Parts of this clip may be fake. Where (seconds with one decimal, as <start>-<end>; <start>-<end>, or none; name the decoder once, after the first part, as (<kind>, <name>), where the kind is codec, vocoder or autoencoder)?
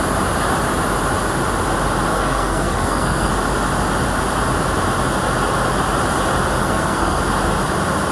2.1-3.3 (codec, SNAC); 6.6-7.2